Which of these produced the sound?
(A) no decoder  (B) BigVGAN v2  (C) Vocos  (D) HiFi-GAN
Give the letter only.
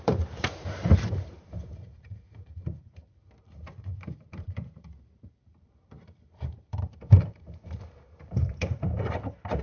B